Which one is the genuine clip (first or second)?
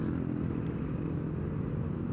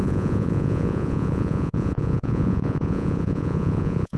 first